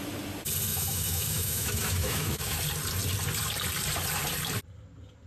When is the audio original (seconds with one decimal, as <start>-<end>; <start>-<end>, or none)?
0.0-0.7; 2.6-5.3